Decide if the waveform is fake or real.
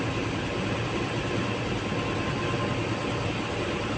real